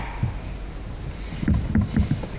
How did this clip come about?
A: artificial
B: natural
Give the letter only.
B